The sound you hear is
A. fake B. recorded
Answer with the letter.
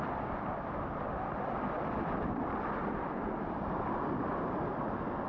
B